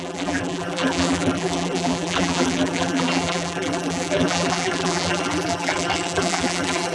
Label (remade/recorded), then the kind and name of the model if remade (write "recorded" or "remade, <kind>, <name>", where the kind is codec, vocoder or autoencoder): remade, vocoder, BigVGAN v2